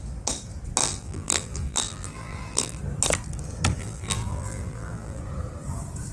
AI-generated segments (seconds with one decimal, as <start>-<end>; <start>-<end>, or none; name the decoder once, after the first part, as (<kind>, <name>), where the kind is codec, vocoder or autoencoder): 0.8-2.8 (vocoder, BigVGAN v2); 3.8-5.2